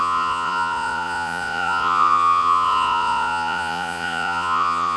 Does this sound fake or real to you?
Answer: fake